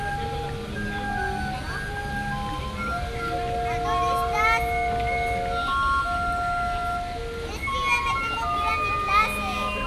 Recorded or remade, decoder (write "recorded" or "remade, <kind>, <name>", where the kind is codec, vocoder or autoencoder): recorded